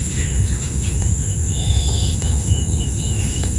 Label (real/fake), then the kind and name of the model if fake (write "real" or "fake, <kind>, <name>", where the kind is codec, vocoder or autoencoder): fake, autoencoder, DAC-VAE